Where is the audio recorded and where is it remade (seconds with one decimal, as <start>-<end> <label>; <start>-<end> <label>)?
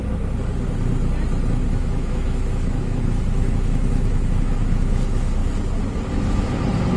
0.0-1.7 recorded; 1.7-5.4 remade; 5.4-7.0 recorded